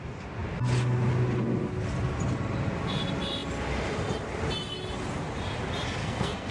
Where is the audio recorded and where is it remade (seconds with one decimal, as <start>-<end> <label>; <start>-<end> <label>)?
0.0-6.0 recorded; 6.0-6.5 remade